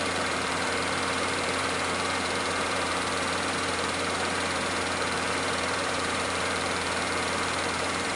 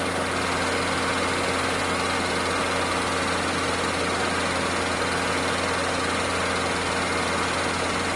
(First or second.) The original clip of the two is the second